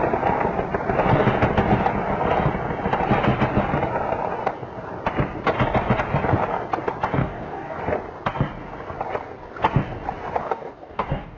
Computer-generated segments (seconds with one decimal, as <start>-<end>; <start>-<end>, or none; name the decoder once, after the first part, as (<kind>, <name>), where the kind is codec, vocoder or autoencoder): 7.2-7.8 (codec, DAC); 10.4-11.4